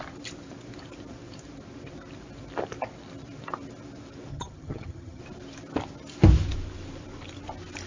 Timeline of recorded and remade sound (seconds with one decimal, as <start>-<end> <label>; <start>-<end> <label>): 0.0-4.3 recorded; 4.3-5.2 remade; 5.2-7.9 recorded